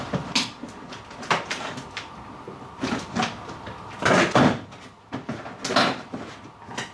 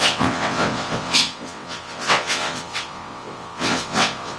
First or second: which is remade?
second